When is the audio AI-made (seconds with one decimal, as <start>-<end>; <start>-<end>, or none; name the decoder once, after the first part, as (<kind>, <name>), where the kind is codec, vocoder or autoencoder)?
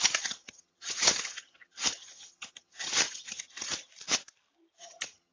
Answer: 0.0-3.9 (vocoder, HiFi-GAN); 4.8-5.3